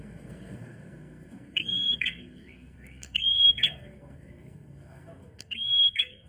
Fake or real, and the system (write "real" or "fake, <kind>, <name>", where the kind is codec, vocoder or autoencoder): fake, codec, SNAC